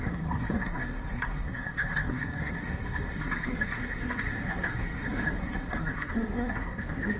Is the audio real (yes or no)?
no